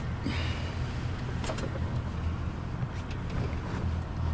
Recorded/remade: recorded